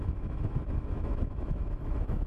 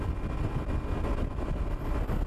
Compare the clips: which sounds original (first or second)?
second